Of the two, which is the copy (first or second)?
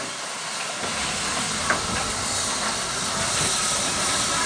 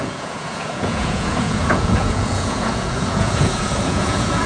second